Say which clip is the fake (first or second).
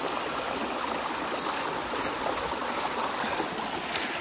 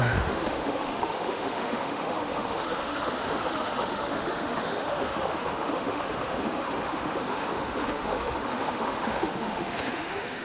second